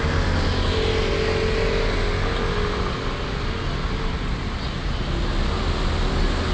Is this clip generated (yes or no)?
no